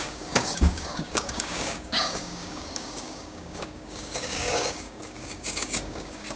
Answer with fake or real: fake